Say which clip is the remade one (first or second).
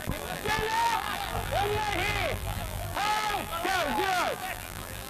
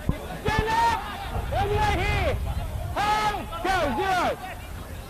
first